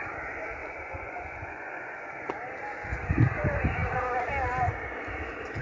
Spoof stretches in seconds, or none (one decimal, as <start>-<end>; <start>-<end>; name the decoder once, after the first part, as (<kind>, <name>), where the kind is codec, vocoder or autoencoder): 0.6-2.1 (vocoder, Vocos)